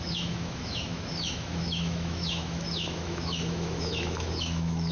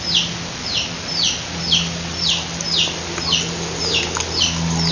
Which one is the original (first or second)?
second